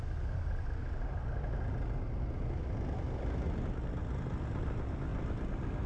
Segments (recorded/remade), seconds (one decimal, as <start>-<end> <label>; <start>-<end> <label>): 0.0-5.9 recorded